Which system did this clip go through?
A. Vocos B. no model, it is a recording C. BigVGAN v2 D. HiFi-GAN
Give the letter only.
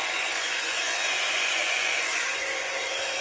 A